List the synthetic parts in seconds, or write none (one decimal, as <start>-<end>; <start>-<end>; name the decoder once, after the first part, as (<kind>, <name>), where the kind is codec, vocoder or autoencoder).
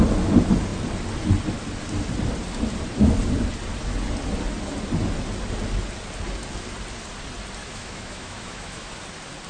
7.6-8.9 (autoencoder, DAC-VAE)